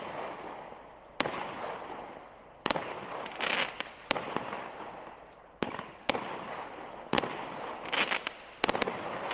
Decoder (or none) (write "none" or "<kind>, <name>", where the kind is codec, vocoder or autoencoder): none